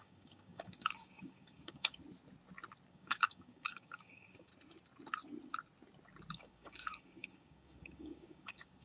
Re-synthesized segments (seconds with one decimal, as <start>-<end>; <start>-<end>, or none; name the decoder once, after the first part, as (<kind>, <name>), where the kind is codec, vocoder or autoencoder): 0.0-2.0 (codec, DAC); 2.9-4.5; 6.3-8.8